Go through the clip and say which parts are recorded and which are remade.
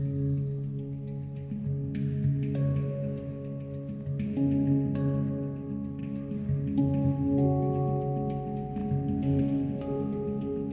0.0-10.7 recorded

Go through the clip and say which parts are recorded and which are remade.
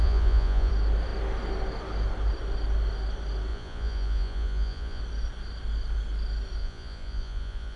0.0-0.7 remade; 0.7-3.5 recorded; 3.5-5.0 remade; 5.0-6.6 recorded; 6.6-7.8 remade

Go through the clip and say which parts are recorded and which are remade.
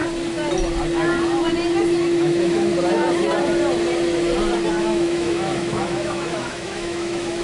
0.0-2.2 recorded; 2.2-2.7 remade; 2.7-4.7 recorded; 4.7-7.4 remade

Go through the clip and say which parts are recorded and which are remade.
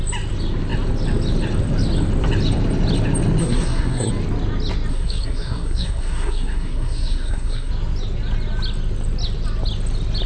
0.0-3.4 recorded; 3.4-4.1 remade; 4.1-4.9 recorded; 4.9-7.7 remade; 7.7-10.3 recorded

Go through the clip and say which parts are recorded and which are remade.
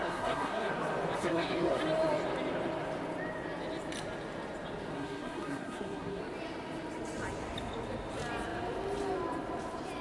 0.0-0.7 remade; 0.7-1.2 recorded; 1.2-1.8 remade; 1.8-4.9 recorded; 4.9-6.2 remade; 6.2-10.0 recorded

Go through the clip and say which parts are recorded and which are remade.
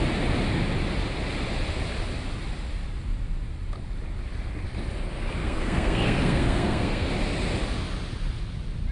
0.0-5.4 recorded; 5.4-7.1 remade; 7.1-8.9 recorded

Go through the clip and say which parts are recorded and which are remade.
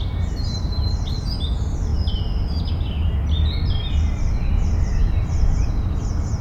0.0-6.4 recorded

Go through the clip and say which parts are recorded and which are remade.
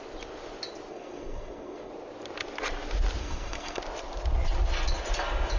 0.0-0.9 recorded; 0.9-1.9 remade; 1.9-3.2 recorded; 3.2-3.8 remade; 3.8-5.6 recorded